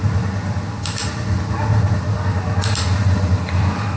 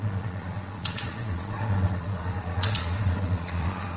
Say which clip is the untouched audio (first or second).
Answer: first